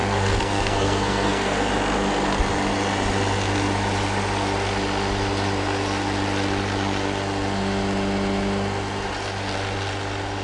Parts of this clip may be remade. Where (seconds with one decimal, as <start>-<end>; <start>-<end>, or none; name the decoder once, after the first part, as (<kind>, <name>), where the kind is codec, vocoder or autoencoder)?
0.0-1.7 (codec, SNAC)